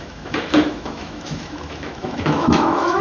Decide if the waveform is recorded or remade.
remade